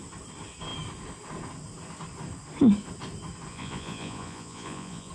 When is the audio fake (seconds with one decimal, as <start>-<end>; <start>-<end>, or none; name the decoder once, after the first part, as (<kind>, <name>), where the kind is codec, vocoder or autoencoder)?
3.5-5.1 (vocoder, Vocos)